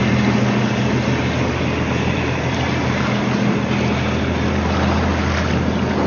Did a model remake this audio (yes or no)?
no